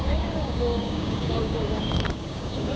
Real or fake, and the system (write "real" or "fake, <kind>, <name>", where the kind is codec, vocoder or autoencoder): fake, codec, DAC